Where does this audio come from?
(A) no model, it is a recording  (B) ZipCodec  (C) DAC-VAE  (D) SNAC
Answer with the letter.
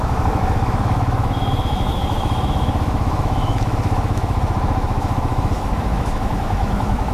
C